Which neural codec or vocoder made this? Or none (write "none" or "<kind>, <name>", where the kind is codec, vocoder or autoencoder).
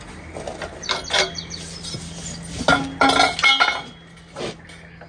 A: none